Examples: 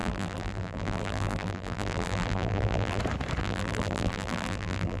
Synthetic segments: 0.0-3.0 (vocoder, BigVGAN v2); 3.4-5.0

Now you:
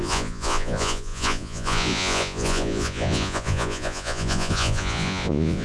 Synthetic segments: 0.0-5.6 (vocoder, Vocos)